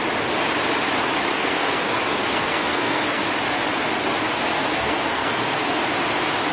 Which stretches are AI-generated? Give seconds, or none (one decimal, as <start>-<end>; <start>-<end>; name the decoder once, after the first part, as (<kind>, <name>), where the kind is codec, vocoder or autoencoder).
1.3-3.3 (codec, SNAC); 4.5-5.7